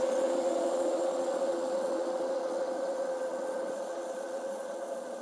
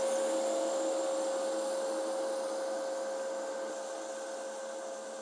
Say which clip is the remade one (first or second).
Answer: first